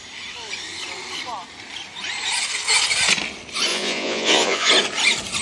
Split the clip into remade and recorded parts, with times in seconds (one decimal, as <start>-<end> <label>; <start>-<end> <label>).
0.0-3.7 recorded; 3.7-4.7 remade; 4.7-5.4 recorded